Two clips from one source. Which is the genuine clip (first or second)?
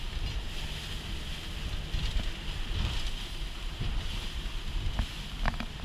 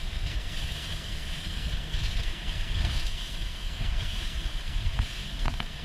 first